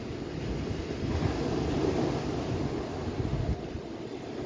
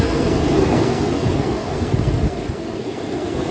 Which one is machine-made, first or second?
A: second